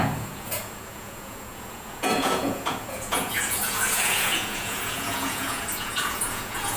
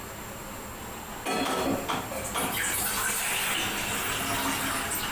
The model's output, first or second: first